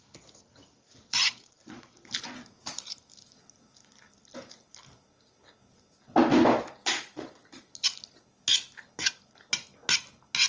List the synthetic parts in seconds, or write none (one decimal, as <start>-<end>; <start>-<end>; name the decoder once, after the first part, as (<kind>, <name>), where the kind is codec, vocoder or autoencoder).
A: 1.2-2.1 (vocoder, Vocos); 6.8-7.6